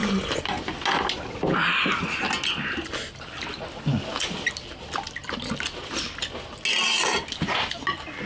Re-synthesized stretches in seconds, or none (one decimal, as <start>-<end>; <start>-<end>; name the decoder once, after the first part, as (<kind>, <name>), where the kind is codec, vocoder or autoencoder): none